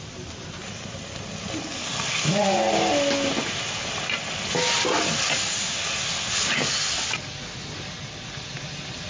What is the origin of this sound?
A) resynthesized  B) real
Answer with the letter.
B